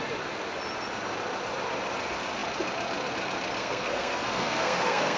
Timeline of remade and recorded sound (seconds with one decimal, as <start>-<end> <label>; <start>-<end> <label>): 0.0-3.6 recorded; 3.6-5.2 remade